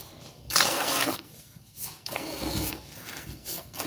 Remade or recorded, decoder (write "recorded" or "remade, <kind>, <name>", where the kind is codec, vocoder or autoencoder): remade, codec, SNAC